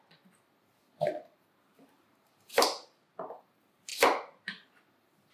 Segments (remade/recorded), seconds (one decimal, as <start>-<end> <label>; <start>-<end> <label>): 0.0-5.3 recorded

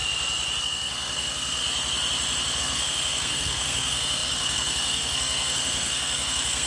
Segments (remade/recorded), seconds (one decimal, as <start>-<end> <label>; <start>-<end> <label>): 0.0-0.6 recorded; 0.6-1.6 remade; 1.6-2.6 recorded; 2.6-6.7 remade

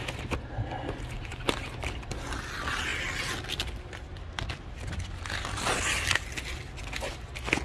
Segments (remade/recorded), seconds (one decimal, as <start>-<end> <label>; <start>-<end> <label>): 0.0-7.6 recorded

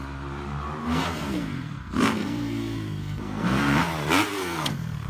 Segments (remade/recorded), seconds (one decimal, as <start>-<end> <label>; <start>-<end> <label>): 0.0-0.8 recorded; 0.8-3.9 remade; 3.9-4.3 recorded; 4.3-5.1 remade